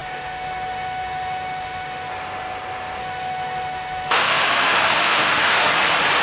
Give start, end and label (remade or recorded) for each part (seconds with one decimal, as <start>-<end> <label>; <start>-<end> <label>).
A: 0.0-2.1 remade; 2.1-3.0 recorded; 3.0-5.7 remade; 5.7-6.2 recorded